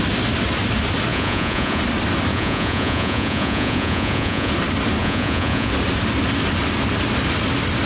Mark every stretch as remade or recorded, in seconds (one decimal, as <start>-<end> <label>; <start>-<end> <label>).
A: 0.0-1.1 recorded; 1.1-1.8 remade; 1.8-2.3 recorded; 2.3-4.5 remade; 4.5-5.0 recorded; 5.0-5.7 remade; 5.7-7.9 recorded